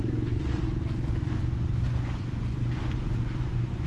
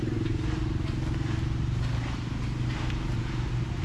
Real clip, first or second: second